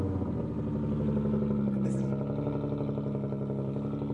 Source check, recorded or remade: recorded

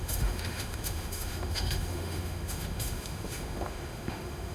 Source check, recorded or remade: remade